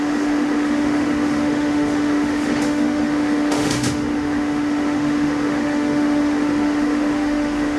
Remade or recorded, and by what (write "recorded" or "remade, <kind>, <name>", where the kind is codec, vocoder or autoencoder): remade, autoencoder, DAC-VAE